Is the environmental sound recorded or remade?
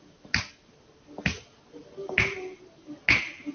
recorded